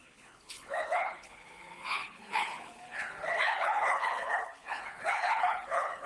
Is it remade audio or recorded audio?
remade